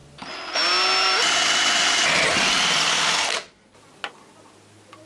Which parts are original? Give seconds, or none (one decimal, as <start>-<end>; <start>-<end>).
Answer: 0.0-5.1